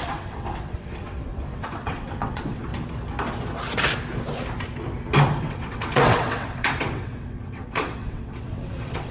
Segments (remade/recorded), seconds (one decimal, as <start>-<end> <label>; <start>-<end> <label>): 0.0-2.7 remade; 2.7-5.4 recorded; 5.4-9.1 remade